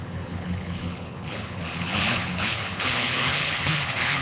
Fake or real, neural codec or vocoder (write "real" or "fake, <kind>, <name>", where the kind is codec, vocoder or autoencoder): fake, codec, HILCodec